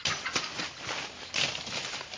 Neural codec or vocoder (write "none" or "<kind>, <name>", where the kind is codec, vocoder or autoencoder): none